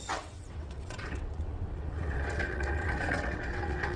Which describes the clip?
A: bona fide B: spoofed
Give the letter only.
B